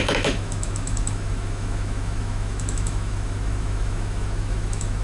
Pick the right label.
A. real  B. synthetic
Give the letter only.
B